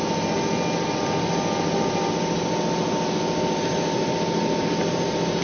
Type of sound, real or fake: real